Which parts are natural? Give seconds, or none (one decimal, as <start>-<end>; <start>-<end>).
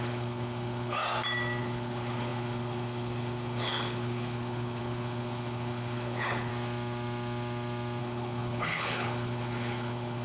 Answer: 1.0-1.6; 6.5-8.0